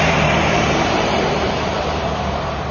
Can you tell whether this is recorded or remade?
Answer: remade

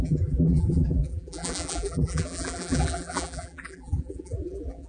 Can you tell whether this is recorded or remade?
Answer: remade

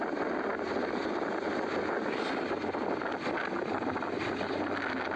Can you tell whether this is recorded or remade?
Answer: recorded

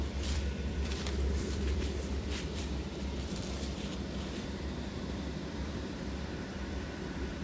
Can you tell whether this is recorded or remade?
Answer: remade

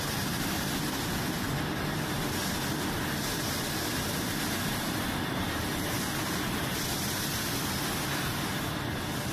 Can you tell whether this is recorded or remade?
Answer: recorded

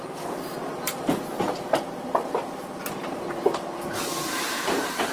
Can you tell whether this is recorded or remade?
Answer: remade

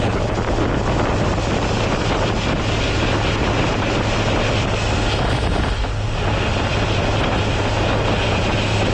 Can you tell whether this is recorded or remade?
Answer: recorded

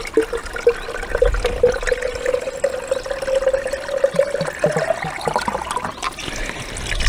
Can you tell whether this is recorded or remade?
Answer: recorded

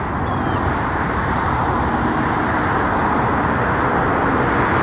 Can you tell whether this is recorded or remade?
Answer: recorded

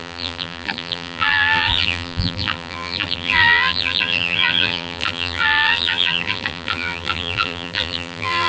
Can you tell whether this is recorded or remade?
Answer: remade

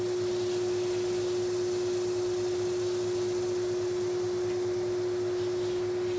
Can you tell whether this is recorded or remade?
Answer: recorded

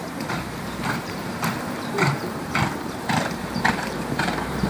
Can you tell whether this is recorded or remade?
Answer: remade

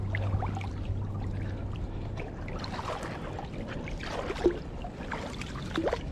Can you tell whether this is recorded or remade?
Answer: recorded